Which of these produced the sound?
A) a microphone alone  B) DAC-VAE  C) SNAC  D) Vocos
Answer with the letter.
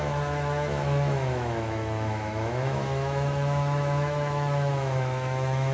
B